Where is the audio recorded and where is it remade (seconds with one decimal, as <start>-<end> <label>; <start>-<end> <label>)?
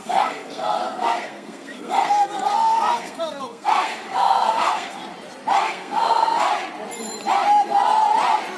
0.0-5.0 remade; 5.0-5.6 recorded; 5.6-6.5 remade; 6.5-8.6 recorded